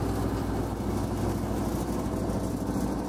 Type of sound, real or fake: real